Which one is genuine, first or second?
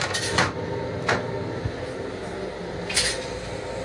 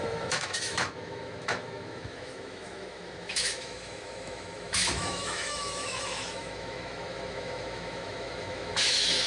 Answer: first